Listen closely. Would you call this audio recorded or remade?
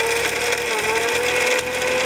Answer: recorded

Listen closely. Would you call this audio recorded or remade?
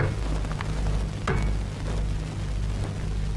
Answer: recorded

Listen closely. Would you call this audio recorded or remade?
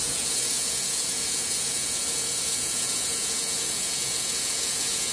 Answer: remade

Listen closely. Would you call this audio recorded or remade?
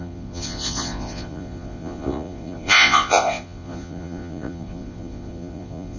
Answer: remade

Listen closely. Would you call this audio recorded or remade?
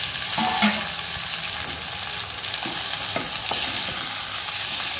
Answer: recorded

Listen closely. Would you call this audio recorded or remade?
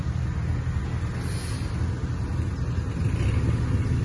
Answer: recorded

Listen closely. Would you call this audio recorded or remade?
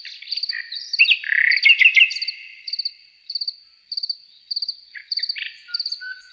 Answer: recorded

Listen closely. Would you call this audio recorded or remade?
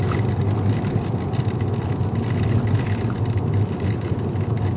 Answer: recorded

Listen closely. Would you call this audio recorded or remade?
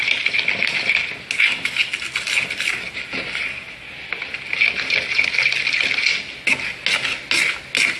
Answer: recorded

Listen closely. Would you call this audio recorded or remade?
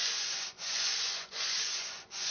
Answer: remade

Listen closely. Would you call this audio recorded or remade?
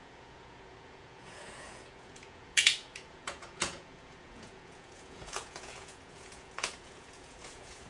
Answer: remade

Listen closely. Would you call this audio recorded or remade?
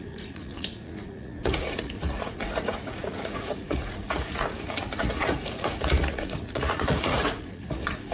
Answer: remade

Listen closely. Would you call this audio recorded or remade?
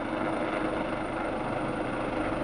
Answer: recorded